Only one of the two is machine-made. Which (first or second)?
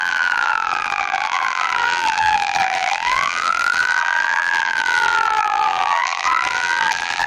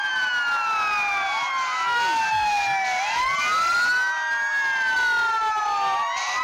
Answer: first